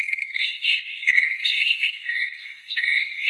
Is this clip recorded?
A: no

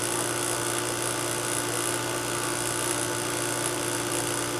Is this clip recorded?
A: yes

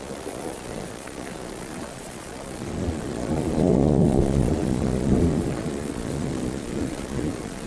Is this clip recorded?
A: no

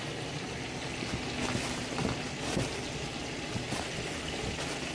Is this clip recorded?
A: yes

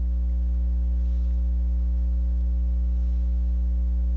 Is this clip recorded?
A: yes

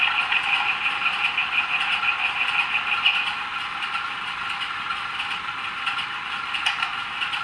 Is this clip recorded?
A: yes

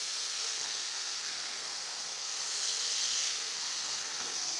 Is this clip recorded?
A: no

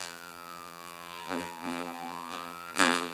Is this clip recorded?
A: no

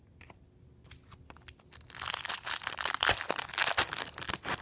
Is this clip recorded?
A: yes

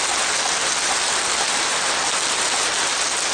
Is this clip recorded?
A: yes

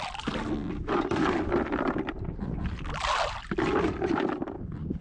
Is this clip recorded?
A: yes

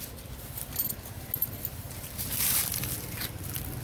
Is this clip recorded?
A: yes